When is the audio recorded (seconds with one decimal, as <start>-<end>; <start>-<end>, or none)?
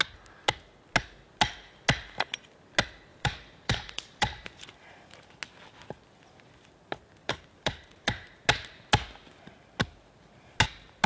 0.0-3.1; 5.4-7.2; 8.4-11.1